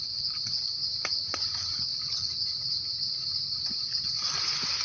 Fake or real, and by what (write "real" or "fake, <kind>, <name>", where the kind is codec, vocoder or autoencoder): real